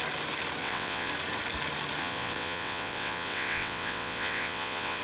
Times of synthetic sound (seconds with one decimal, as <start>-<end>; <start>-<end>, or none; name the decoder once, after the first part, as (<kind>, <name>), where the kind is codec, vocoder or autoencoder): 0.6-1.1 (vocoder, WaveNeXt); 2.0-5.0

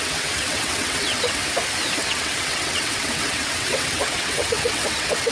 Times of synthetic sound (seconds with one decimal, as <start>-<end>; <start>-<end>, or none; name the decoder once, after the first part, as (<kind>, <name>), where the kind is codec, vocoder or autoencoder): 0.0-1.4 (vocoder, WaveNeXt); 2.0-5.3